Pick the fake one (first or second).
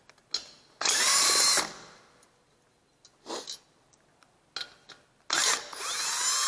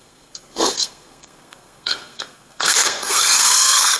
second